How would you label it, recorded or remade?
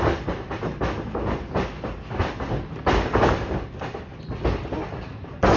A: recorded